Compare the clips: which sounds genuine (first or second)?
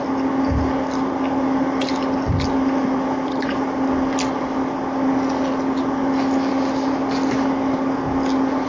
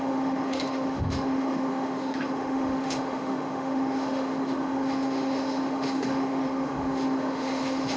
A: first